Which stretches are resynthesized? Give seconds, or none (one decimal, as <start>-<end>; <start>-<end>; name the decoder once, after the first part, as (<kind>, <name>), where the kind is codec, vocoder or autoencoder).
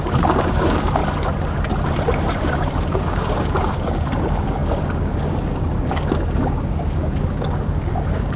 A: 0.0-1.0 (codec, DAC); 2.4-8.4